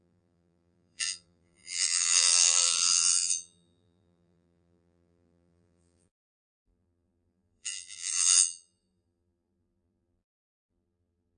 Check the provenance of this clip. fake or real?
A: fake